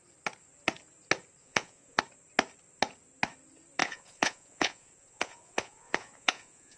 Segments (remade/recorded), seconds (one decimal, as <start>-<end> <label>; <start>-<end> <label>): 0.0-1.4 recorded; 1.4-2.0 remade; 2.0-3.8 recorded; 3.8-6.8 remade